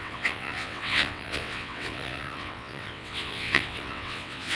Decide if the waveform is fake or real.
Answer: fake